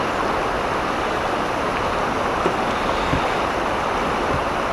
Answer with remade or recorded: recorded